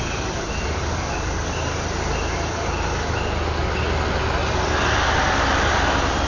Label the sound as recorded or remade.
recorded